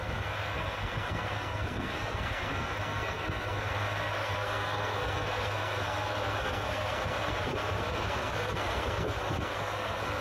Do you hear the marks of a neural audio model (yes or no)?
yes